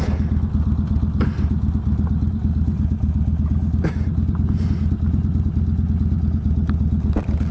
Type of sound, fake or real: real